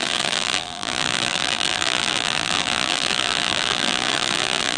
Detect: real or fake fake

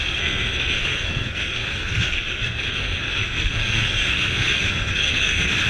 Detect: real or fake fake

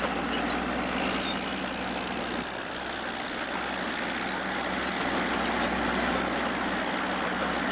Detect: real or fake real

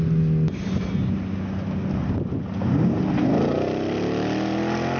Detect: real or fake real